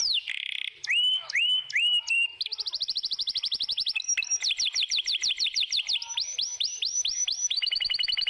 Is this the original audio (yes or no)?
no